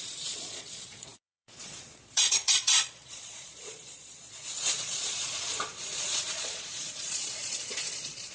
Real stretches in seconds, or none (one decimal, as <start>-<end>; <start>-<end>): none